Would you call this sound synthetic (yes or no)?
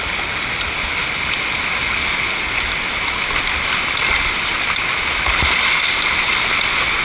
no